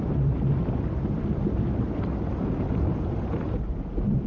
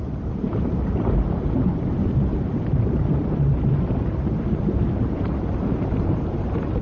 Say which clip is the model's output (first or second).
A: second